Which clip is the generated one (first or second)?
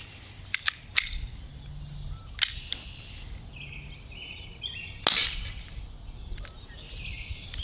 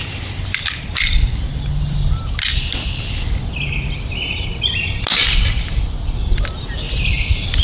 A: second